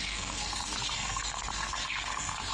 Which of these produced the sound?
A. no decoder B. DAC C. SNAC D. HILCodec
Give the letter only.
C